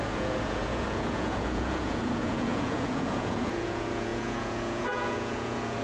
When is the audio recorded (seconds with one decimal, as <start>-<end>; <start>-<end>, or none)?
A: none